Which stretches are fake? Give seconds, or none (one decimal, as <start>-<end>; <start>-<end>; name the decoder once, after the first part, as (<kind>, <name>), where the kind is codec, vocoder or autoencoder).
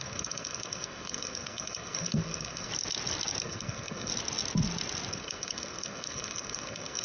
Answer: 0.0-2.7 (codec, SNAC); 3.4-4.1; 5.1-7.0